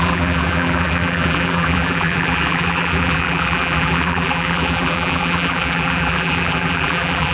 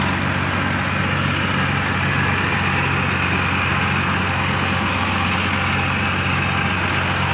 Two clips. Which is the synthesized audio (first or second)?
first